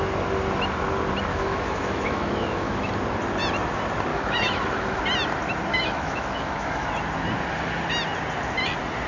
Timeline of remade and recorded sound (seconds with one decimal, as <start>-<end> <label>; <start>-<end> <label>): 0.0-1.3 recorded; 1.3-2.9 remade; 2.9-4.1 recorded; 4.1-5.0 remade; 5.0-5.7 recorded; 5.7-6.9 remade; 6.9-9.1 recorded